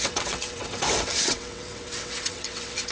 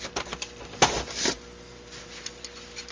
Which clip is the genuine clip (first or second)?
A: second